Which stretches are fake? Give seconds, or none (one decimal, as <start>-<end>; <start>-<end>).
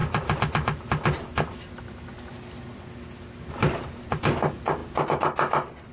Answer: none